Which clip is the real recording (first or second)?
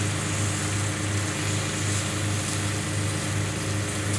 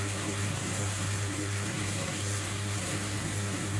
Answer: first